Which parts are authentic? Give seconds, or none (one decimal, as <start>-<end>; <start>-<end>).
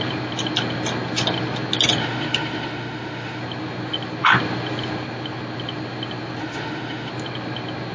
0.0-2.0; 3.4-6.4; 7.1-7.9